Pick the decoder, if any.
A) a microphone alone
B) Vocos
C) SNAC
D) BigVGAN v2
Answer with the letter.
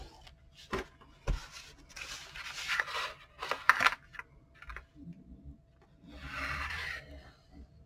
A